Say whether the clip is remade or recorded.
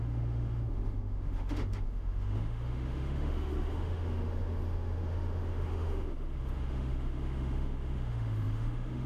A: remade